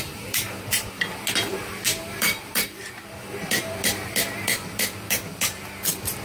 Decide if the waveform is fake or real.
fake